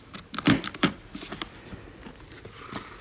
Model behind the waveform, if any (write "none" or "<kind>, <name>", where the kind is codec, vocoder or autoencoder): none